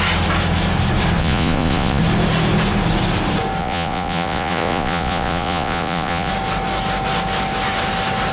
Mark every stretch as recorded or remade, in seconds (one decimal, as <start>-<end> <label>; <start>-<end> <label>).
0.0-1.2 recorded; 1.2-2.0 remade; 2.0-3.6 recorded; 3.6-6.3 remade; 6.3-8.3 recorded